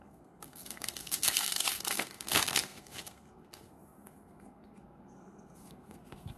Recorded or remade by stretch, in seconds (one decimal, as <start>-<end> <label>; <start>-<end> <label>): 0.0-6.4 remade